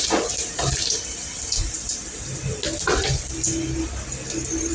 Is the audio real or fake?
fake